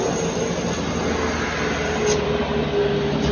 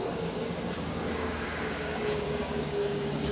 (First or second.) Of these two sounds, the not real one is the second